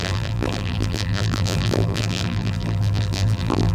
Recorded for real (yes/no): no